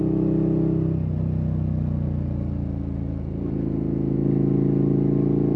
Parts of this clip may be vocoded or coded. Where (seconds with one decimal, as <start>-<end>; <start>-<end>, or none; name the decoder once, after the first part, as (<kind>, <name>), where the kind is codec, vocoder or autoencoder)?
none

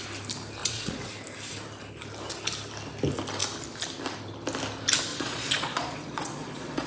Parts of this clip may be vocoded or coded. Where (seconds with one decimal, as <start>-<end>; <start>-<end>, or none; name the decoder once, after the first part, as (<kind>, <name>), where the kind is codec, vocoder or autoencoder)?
0.6-1.1 (vocoder, Vocos); 5.1-6.9

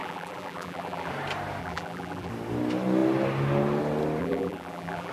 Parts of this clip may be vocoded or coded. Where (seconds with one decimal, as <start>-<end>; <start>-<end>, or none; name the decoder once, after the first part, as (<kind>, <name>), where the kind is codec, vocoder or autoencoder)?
0.0-1.1 (vocoder, BigVGAN v2); 1.6-2.3; 4.2-5.1

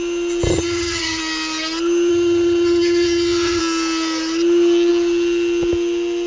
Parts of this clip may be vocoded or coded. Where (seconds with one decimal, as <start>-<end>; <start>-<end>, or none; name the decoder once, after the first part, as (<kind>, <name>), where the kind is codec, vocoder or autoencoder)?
0.5-1.2 (vocoder, HiFi-GAN); 2.1-3.6

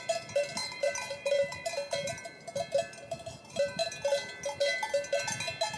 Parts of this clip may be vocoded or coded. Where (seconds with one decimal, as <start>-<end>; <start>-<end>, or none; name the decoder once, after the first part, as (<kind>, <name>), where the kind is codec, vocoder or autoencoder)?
0.0-3.8 (vocoder, BigVGAN v2)

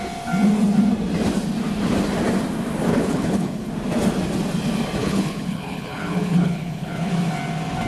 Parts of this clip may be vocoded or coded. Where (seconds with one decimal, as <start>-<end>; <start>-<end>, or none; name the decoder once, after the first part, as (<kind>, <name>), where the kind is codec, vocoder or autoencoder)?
2.9-3.7 (codec, HILCodec); 5.0-7.1

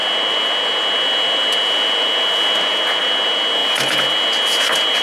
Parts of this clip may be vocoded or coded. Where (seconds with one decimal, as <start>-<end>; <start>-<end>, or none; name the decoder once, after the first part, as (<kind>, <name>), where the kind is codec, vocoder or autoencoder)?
none

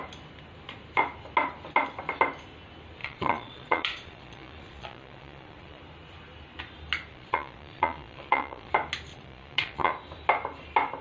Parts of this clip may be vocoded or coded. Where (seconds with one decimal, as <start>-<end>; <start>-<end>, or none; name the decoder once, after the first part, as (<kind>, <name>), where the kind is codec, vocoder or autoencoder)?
3.0-5.8 (vocoder, Vocos); 7.1-8.7; 9.1-9.9